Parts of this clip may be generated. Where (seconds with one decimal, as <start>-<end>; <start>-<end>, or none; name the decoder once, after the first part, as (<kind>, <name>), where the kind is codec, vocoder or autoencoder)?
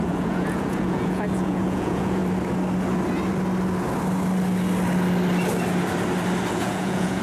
0.0-2.2 (vocoder, Vocos); 6.5-7.2